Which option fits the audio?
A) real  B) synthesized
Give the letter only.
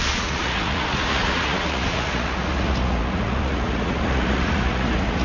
B